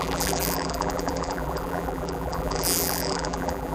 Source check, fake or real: fake